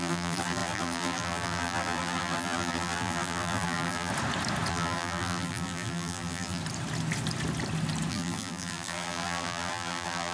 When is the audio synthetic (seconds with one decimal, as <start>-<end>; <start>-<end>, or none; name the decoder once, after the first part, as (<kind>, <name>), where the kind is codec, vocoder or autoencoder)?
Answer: 0.0-4.1 (vocoder, BigVGAN v2); 4.7-6.6; 8.1-10.3